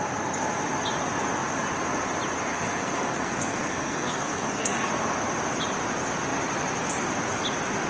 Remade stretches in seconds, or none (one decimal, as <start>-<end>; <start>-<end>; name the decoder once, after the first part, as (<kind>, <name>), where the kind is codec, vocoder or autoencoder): 2.5-4.9 (codec, SNAC)